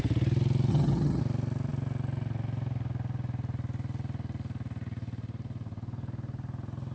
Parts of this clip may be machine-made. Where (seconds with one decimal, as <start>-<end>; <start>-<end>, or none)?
0.7-1.2